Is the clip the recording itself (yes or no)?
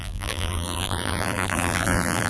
no